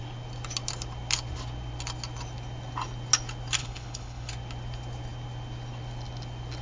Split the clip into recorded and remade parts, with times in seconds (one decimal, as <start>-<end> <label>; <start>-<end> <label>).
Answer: 0.0-3.6 recorded; 3.6-4.3 remade; 4.3-6.6 recorded